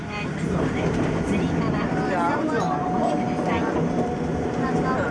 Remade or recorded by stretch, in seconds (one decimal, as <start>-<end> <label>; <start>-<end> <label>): 0.0-0.8 remade; 0.8-5.1 recorded